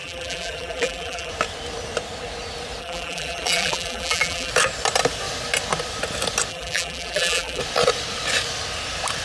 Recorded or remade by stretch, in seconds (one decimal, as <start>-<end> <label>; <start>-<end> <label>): 0.0-1.3 remade; 1.3-2.8 recorded; 2.8-4.5 remade; 4.5-6.5 recorded; 6.5-7.6 remade; 7.6-9.2 recorded